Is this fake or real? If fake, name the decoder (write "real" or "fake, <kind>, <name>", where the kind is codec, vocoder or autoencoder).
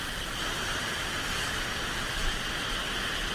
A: real